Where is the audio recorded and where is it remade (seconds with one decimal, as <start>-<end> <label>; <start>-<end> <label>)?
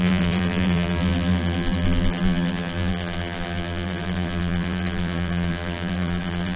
0.0-6.6 remade